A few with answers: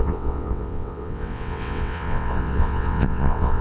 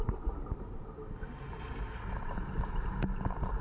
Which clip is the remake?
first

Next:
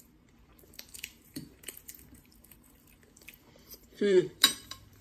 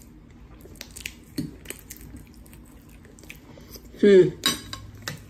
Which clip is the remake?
first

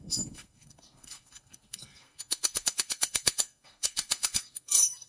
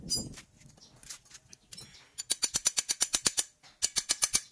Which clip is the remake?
first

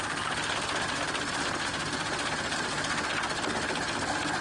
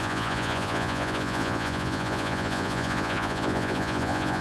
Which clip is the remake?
second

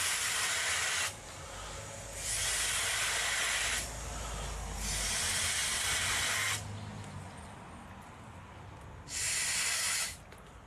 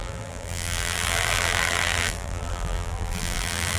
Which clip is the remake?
second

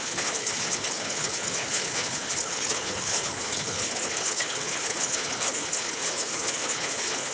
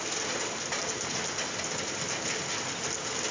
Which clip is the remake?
first